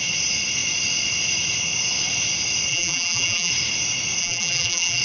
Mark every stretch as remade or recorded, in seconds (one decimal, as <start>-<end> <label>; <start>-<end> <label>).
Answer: 0.0-2.7 recorded; 2.7-3.5 remade; 3.5-4.2 recorded; 4.2-5.0 remade